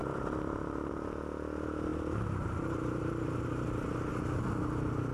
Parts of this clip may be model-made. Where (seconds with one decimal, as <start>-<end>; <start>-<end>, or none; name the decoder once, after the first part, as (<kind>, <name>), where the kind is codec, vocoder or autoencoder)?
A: 0.0-0.9 (vocoder, BigVGAN v2); 1.9-4.1